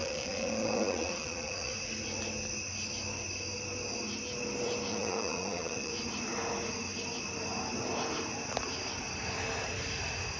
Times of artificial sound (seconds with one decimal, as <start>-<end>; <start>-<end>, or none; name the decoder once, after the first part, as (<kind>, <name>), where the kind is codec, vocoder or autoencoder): 0.0-1.7 (vocoder, Vocos); 4.9-5.9

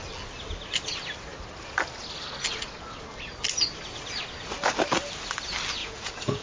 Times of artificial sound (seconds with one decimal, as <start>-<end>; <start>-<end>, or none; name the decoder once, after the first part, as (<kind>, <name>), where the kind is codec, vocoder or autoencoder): 5.8-6.4 (vocoder, Vocos)

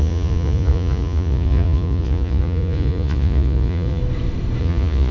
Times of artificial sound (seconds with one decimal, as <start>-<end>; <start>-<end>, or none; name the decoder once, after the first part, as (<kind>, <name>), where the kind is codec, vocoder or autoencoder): 0.0-4.0 (vocoder, Vocos); 4.6-5.1

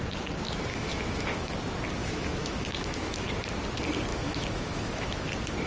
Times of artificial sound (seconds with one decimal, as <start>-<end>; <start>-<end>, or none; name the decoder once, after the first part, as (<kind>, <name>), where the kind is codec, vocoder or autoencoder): 0.7-1.5 (autoencoder, DAC-VAE); 2.0-3.3; 4.1-5.3

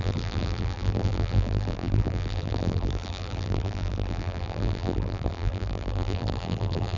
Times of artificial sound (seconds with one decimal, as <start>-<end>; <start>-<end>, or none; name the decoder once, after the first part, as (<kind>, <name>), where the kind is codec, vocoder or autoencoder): 0.0-7.0 (vocoder, BigVGAN v2)